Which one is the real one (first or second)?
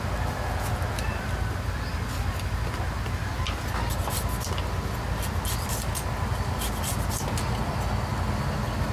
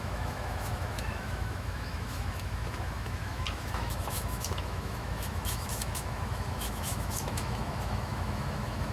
first